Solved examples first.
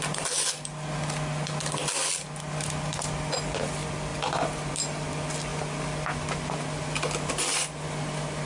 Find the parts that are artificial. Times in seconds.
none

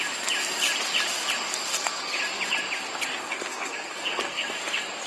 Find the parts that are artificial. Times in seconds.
1.7-2.2 (codec, SNAC); 3.3-4.6

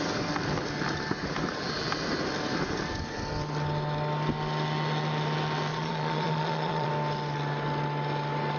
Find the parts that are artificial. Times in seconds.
5.7-6.9 (vocoder, Vocos)

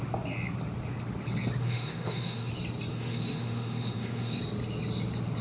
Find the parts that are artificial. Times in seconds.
1.6-2.5 (autoencoder, DAC-VAE); 2.9-4.4